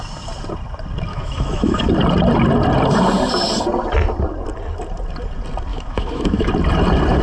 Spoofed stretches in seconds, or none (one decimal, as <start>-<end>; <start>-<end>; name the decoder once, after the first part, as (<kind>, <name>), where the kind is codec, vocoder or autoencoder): 1.1-1.9 (autoencoder, DAC-VAE); 5.7-6.5

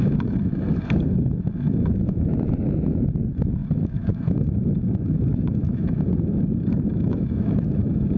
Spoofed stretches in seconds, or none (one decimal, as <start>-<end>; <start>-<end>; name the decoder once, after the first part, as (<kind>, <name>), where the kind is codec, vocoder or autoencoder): 0.0-8.2 (autoencoder, DAC-VAE)